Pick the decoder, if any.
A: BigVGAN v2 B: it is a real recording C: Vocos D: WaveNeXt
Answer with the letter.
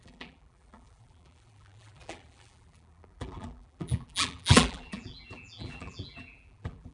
A